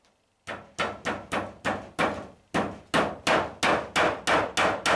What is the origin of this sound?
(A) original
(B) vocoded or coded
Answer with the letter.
A